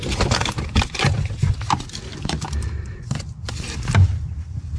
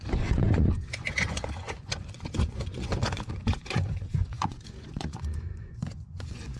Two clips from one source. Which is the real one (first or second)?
first